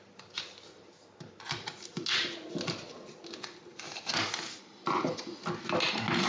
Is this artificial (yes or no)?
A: no